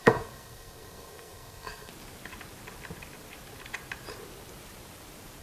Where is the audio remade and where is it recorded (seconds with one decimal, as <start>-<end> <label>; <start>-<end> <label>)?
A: 0.0-1.9 remade; 1.9-5.4 recorded